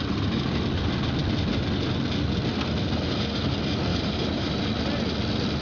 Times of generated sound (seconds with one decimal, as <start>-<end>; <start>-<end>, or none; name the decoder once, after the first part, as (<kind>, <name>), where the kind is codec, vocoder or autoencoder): 3.9-4.6 (vocoder, BigVGAN v2)